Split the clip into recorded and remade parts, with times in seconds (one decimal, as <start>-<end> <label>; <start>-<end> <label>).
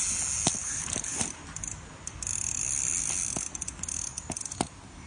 0.0-0.6 recorded; 0.6-1.4 remade; 1.4-4.1 recorded; 4.1-5.1 remade